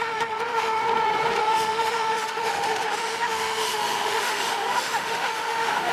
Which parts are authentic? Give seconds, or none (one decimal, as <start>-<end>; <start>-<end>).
0.8-1.4